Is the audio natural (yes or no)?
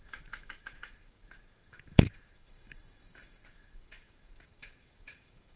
no